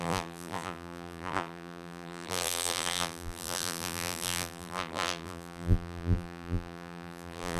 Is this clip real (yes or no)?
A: no